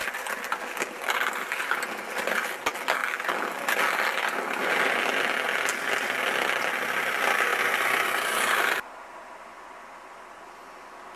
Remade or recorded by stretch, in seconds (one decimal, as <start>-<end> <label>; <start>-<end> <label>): 0.0-11.2 recorded